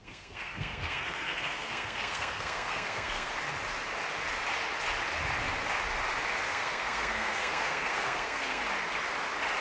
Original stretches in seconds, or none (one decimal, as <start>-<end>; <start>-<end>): 3.3-6.5; 8.6-9.6